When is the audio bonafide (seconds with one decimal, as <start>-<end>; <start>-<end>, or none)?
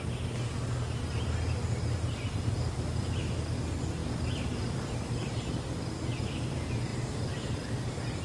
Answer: 0.0-8.2